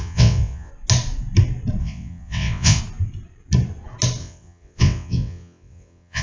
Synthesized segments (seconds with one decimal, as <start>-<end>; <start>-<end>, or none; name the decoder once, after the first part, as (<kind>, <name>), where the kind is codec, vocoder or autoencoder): 0.0-0.7 (vocoder, WaveNeXt); 1.8-2.8; 4.2-6.2